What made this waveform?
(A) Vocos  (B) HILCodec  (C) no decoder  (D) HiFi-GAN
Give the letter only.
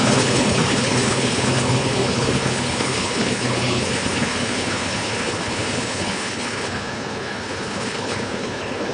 B